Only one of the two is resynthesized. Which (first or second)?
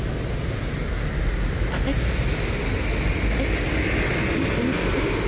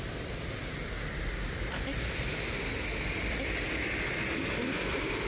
second